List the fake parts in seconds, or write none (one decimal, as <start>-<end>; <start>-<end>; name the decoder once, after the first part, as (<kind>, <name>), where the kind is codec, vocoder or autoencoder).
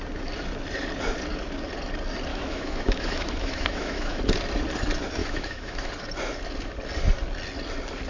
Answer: 2.3-4.2 (autoencoder, DAC-VAE); 5.2-5.9